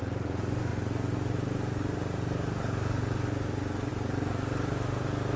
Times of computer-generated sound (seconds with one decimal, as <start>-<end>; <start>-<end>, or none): none